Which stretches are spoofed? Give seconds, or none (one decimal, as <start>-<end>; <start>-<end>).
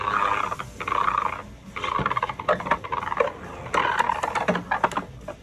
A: none